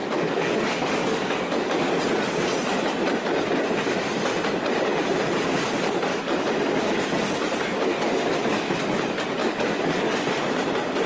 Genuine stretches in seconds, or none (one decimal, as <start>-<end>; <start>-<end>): 1.9-6.1; 7.0-7.9; 8.7-9.4; 10.1-11.1